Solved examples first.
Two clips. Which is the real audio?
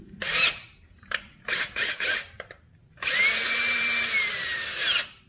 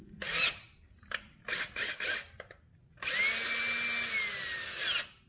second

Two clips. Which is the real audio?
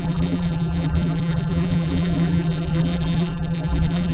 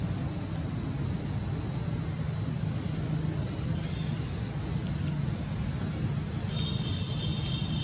second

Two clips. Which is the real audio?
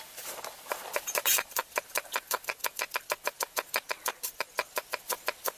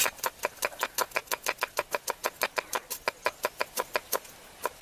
second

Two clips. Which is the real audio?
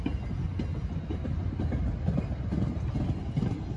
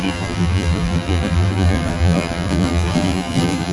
first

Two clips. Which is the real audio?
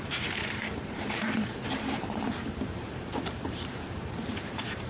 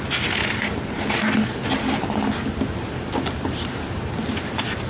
second